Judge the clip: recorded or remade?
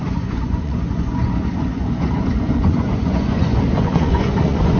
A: remade